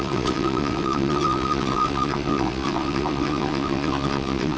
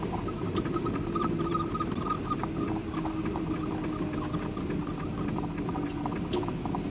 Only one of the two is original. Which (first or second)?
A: second